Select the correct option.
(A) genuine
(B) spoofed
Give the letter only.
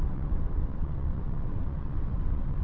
B